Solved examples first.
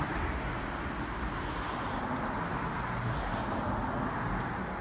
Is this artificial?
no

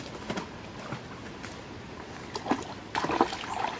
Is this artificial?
no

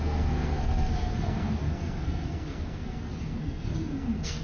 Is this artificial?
yes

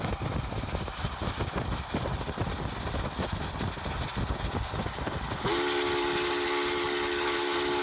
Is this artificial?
no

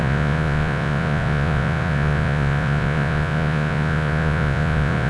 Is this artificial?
yes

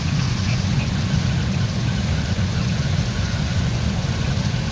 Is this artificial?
yes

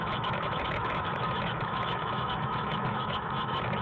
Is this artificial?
yes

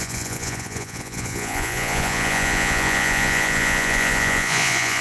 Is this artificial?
yes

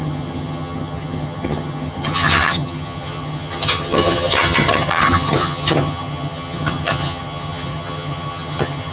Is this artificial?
yes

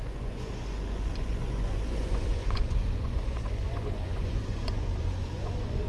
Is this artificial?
yes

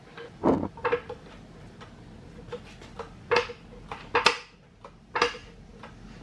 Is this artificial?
no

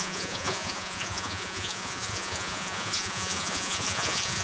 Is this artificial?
yes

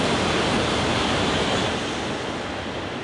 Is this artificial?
no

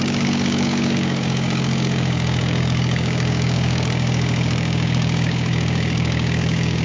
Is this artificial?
yes